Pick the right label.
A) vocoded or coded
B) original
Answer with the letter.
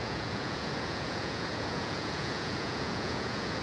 A